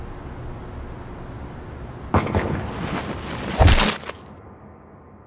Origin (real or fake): real